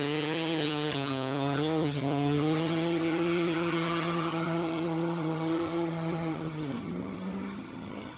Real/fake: fake